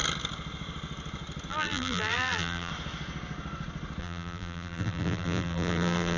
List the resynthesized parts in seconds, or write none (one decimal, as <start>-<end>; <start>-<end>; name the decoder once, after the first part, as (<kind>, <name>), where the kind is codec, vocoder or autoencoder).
1.5-2.7 (vocoder, BigVGAN v2); 4.0-6.2